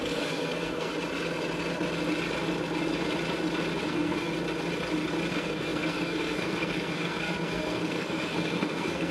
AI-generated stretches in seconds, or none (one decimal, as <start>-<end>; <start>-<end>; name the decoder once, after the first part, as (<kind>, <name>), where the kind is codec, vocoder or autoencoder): 0.0-0.9 (codec, SNAC); 3.8-4.3; 5.3-9.1